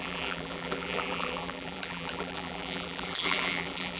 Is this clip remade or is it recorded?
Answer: remade